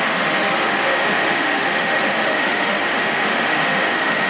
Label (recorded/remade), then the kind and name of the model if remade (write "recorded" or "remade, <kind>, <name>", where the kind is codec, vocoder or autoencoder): remade, autoencoder, DAC-VAE